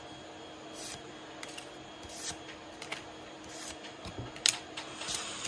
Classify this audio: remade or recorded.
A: recorded